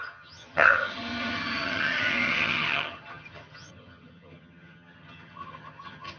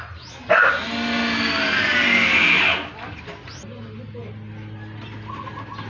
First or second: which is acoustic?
second